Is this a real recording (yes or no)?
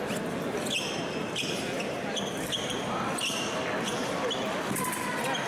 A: yes